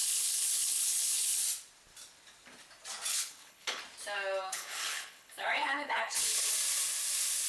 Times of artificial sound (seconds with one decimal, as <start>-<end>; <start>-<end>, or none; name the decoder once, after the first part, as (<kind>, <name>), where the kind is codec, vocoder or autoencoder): 0.0-1.4 (codec, HILCodec); 3.1-3.8; 4.5-6.5